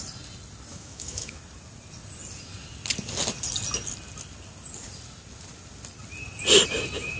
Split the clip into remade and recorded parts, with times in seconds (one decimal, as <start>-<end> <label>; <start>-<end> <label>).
0.0-0.7 recorded; 0.7-1.4 remade; 1.4-7.2 recorded